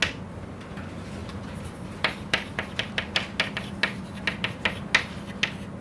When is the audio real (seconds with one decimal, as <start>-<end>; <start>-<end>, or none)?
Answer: 0.0-1.2; 2.9-5.8